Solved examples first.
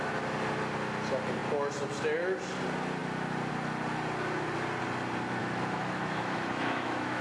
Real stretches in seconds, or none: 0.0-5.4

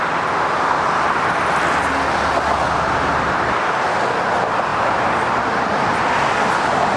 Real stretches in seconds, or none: 0.0-7.0

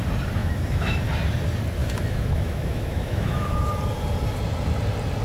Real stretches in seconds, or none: 0.0-0.4; 1.0-1.8; 3.7-5.2

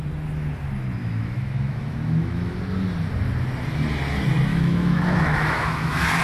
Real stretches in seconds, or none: 0.0-1.0; 2.5-4.5

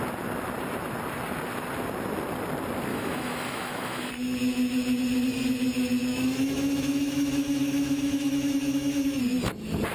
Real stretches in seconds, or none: 0.0-2.9; 4.1-6.1; 9.2-9.9

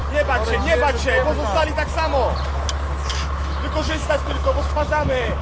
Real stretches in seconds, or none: 0.0-3.1

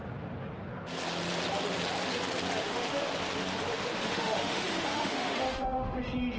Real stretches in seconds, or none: 0.0-2.6; 3.1-3.7; 6.0-6.4

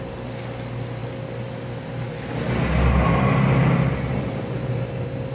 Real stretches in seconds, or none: 0.0-5.3